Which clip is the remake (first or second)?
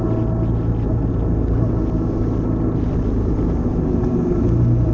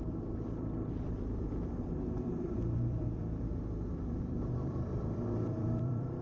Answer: second